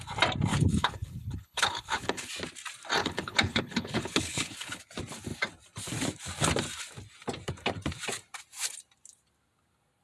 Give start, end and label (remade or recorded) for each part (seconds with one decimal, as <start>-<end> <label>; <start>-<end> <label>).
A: 0.0-0.5 recorded; 0.5-2.3 remade; 2.3-3.0 recorded; 3.0-4.8 remade; 4.8-10.0 recorded